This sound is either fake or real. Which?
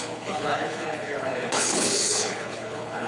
fake